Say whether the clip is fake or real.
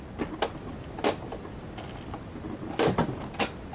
real